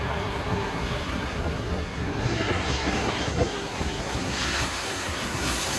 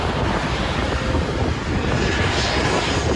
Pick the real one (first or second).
second